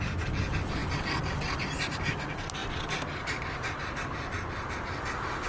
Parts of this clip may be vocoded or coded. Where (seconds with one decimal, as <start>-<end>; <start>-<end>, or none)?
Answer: none